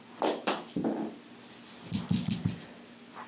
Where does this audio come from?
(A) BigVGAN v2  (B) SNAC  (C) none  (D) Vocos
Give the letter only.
C